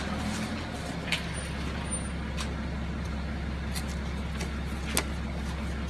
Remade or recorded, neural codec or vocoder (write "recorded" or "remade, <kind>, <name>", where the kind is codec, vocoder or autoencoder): recorded